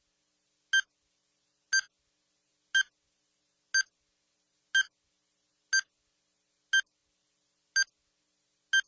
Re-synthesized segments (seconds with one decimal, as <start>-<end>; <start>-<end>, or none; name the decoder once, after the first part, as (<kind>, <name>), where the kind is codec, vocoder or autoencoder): none